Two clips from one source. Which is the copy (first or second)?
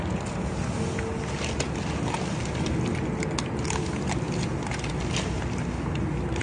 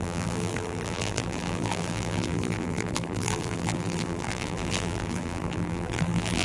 second